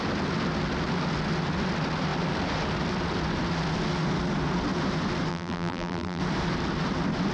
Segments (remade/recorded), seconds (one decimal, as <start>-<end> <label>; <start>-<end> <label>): 0.0-5.3 recorded; 5.3-6.2 remade; 6.2-7.3 recorded